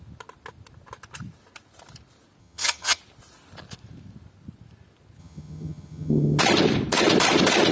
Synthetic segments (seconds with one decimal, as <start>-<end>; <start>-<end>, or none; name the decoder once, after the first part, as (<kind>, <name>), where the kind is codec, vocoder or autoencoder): 2.4-3.0 (vocoder, HiFi-GAN); 5.2-6.4

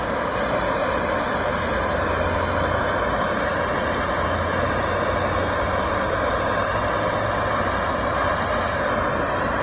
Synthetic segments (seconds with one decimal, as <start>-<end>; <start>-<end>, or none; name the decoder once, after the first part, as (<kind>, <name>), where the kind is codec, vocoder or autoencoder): none

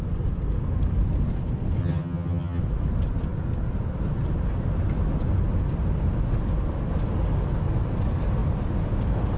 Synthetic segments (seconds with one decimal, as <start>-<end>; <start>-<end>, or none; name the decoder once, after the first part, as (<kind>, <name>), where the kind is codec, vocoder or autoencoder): 1.8-2.6 (vocoder, HiFi-GAN)

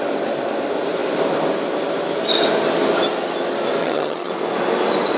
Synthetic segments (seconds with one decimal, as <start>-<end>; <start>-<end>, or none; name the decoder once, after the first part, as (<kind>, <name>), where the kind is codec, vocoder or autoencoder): 3.8-4.3 (vocoder, HiFi-GAN)

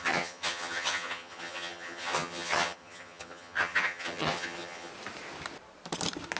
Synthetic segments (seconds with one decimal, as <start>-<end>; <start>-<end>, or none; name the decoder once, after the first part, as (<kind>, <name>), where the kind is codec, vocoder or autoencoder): 0.0-4.9 (vocoder, HiFi-GAN)

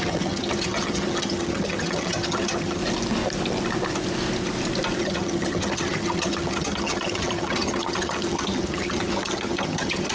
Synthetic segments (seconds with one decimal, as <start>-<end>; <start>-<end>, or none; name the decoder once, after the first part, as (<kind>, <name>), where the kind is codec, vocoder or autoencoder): 0.0-2.8 (vocoder, HiFi-GAN); 5.0-10.1

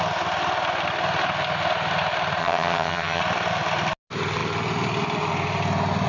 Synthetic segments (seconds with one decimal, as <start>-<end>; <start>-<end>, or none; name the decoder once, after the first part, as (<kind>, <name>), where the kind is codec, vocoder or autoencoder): 2.4-3.2 (vocoder, HiFi-GAN)

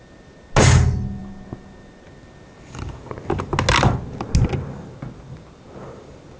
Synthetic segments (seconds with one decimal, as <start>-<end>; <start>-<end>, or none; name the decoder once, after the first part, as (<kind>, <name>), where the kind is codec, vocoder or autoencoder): none